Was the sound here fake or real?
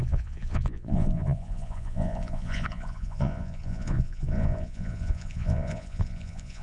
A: fake